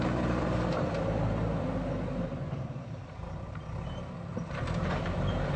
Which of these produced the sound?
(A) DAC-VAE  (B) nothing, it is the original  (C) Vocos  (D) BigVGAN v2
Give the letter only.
D